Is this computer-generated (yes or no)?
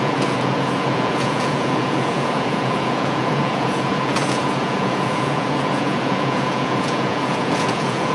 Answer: yes